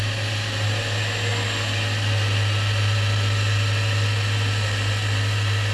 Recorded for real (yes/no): yes